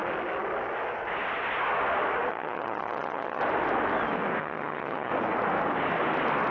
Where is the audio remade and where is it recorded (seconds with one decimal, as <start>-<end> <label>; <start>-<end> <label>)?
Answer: 0.0-2.3 recorded; 2.3-3.4 remade; 3.4-4.4 recorded; 4.4-5.1 remade; 5.1-6.5 recorded